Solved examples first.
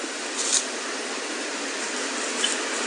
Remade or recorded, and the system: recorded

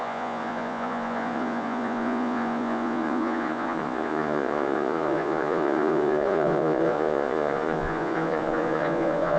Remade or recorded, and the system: remade, vocoder, Vocos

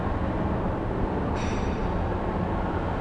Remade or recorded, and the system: recorded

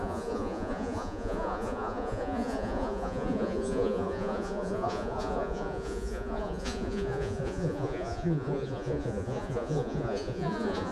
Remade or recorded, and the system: remade, vocoder, Vocos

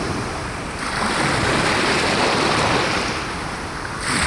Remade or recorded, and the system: recorded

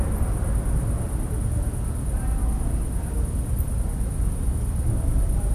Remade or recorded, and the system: recorded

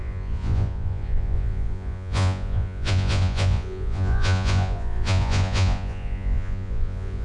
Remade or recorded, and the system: remade, vocoder, Vocos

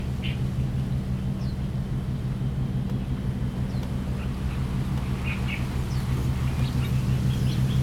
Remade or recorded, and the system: recorded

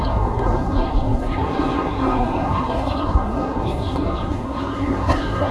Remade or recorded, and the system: remade, codec, SNAC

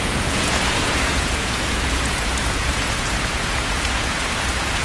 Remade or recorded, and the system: remade, vocoder, Vocos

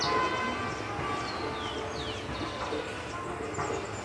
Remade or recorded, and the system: recorded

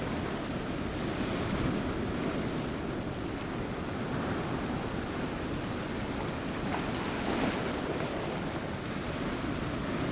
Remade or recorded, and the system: recorded